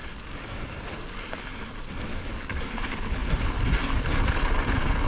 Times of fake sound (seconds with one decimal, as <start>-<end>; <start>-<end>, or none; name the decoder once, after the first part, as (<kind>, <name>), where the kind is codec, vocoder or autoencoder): 2.1-2.7 (codec, DAC)